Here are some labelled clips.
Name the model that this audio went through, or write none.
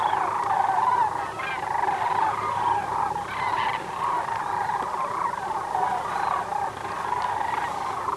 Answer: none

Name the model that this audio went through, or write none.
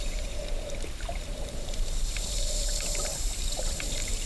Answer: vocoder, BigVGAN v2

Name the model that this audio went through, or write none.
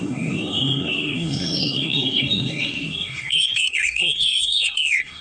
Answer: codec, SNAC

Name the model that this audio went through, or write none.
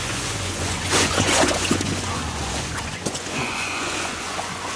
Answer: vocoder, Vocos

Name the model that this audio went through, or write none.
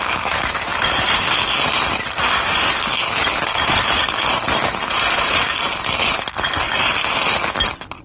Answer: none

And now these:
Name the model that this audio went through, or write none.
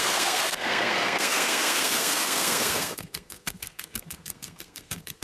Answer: codec, SNAC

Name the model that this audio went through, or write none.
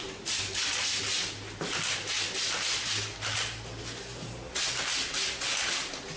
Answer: none